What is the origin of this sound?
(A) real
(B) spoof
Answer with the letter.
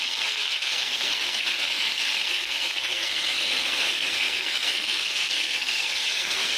B